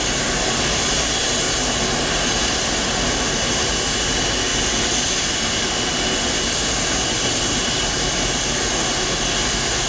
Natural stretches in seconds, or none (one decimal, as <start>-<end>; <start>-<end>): 0.0-9.9